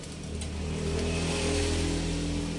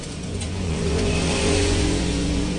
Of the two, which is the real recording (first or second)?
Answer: first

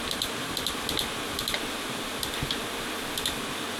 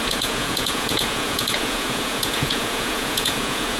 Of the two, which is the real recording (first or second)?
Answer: first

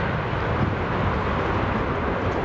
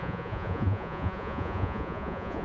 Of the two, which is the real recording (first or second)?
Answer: first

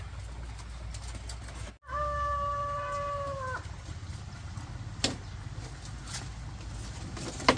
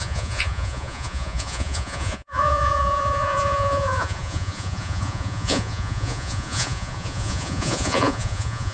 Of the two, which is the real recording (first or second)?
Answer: first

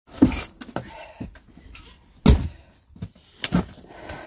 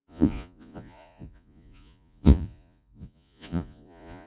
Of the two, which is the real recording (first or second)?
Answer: first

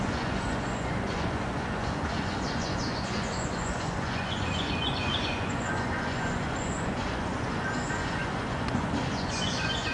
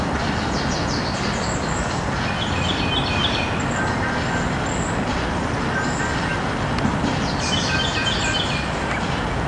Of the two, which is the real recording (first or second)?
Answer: second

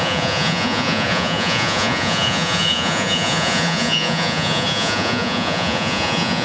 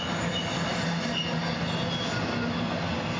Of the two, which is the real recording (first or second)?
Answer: second